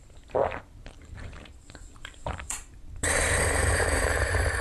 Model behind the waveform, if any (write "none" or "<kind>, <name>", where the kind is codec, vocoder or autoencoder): vocoder, BigVGAN v2